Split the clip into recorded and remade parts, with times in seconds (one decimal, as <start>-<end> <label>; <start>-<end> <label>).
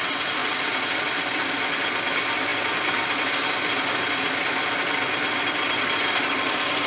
0.0-6.9 recorded